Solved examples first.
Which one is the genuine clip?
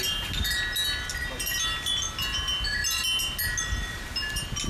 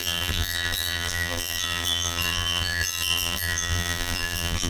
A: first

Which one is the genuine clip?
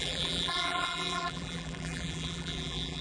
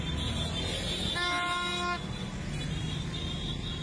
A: second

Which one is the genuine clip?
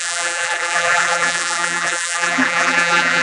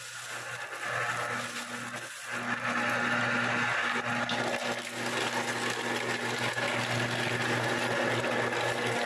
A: second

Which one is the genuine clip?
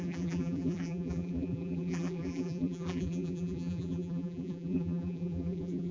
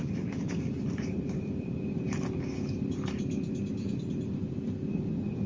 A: second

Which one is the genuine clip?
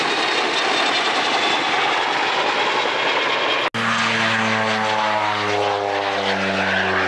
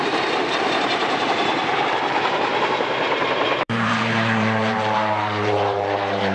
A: first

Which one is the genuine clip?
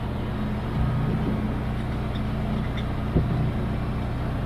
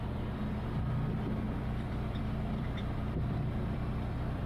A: first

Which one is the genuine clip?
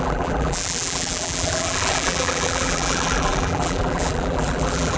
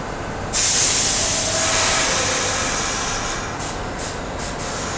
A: second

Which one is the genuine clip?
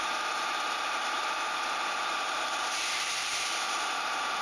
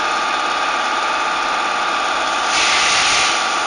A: second